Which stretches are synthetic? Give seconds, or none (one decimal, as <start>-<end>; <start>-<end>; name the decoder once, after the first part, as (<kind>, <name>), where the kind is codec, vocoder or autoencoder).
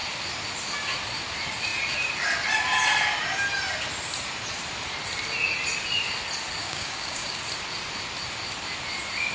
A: 6.6-7.4 (codec, DAC)